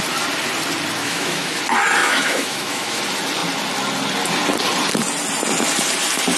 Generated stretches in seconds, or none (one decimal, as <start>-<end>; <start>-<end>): 1.0-1.6; 2.0-3.0